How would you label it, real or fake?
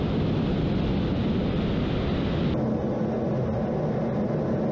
real